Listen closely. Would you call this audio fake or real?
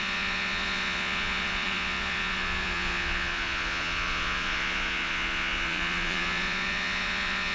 fake